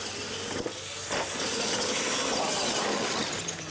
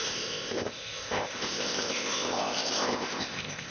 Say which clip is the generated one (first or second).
second